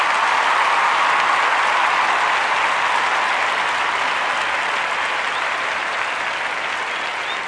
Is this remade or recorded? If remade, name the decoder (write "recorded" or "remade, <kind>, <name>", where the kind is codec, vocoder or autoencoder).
recorded